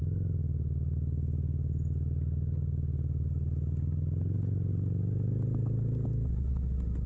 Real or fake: real